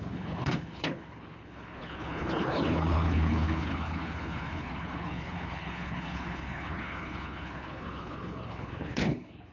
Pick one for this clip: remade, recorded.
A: remade